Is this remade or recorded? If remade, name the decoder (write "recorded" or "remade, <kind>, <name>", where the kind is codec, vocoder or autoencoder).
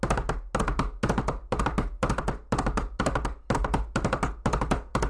recorded